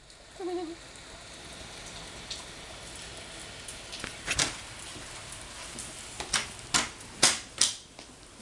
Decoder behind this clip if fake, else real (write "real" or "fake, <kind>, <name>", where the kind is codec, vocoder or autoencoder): real